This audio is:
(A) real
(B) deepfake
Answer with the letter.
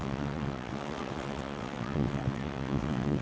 B